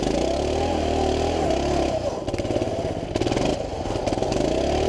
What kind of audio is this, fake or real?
real